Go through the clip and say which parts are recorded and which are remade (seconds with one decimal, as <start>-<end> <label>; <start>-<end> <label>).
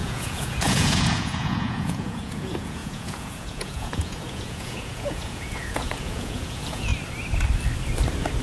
0.0-6.9 remade; 6.9-8.4 recorded